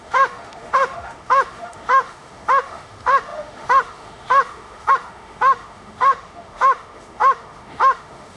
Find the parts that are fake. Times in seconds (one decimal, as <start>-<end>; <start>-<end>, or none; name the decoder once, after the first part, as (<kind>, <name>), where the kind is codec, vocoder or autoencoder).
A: 0.0-8.4 (autoencoder, DAC-VAE)